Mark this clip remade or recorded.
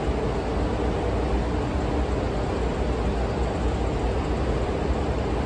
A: recorded